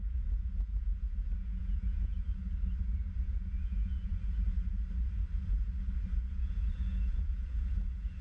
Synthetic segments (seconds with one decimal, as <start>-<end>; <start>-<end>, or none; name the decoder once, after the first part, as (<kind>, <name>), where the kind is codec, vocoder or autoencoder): 0.0-2.1 (vocoder, Vocos); 3.3-4.1; 6.3-8.2